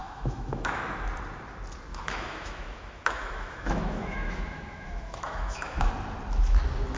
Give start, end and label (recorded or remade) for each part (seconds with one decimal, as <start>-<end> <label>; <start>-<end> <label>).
0.0-0.8 remade; 0.8-1.9 recorded; 1.9-5.9 remade; 5.9-7.0 recorded